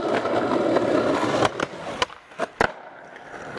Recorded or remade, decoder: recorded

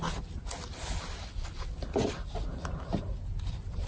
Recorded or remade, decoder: recorded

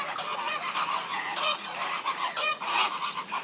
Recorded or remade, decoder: remade, vocoder, Vocos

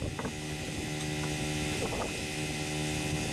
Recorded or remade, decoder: recorded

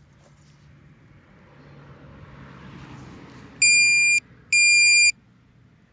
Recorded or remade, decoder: recorded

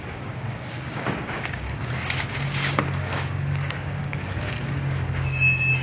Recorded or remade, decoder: remade, codec, DAC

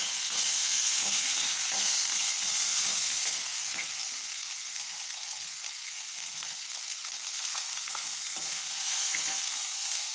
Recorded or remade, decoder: remade, codec, SNAC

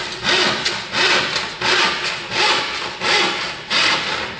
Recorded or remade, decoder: recorded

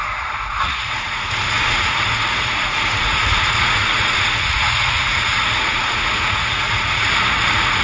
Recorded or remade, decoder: remade, vocoder, Vocos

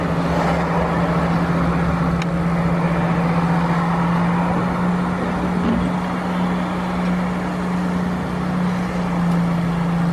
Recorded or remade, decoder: recorded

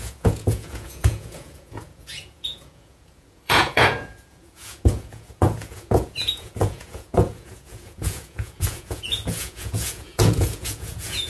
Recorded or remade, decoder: remade, vocoder, Vocos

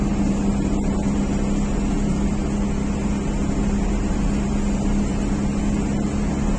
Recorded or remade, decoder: recorded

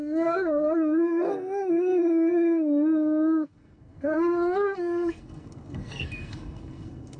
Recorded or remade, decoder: remade, codec, SNAC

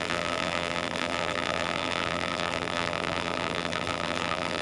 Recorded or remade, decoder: remade, vocoder, BigVGAN v2